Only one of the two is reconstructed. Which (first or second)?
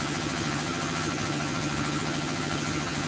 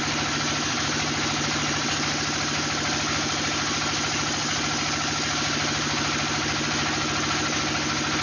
first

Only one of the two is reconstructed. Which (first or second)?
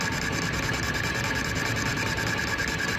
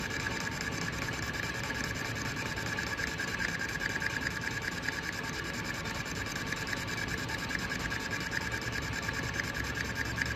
second